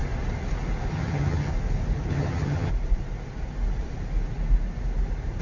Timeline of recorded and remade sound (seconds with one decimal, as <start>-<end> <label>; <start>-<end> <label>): 0.0-0.9 recorded; 0.9-1.5 remade; 1.5-2.1 recorded; 2.1-2.7 remade; 2.7-5.4 recorded